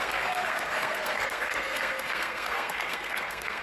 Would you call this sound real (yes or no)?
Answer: no